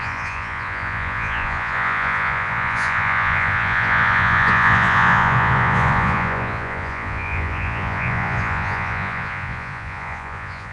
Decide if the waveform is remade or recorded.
remade